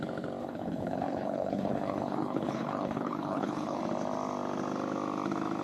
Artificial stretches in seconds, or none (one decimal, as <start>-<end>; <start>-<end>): 0.4-3.8